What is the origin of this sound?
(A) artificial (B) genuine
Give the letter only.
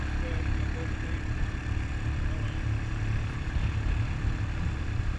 B